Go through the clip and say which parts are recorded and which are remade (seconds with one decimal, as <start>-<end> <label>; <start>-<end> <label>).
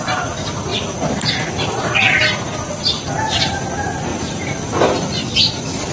0.0-5.9 recorded